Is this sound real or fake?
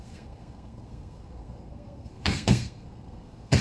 fake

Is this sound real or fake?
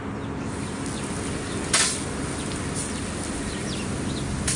real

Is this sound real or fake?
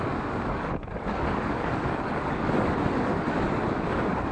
fake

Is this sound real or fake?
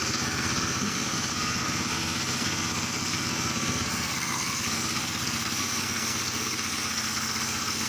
fake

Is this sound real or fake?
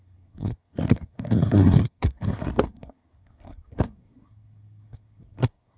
fake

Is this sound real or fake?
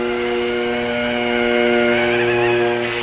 real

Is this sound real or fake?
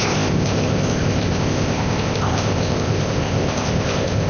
fake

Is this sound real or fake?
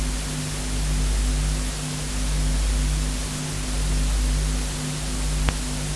real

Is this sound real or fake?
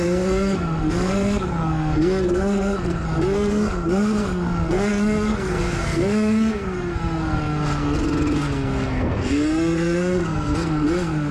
fake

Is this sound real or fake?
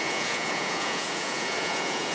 fake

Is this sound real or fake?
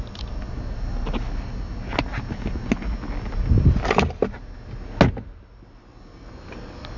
real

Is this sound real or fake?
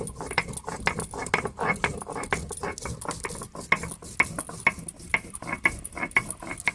real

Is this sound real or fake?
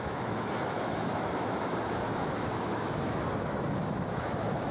fake